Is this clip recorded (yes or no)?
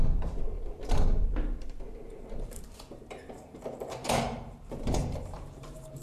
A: no